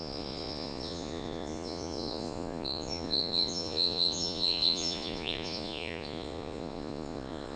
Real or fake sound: fake